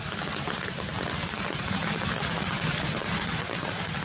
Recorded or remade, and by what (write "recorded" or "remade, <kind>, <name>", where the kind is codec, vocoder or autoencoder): recorded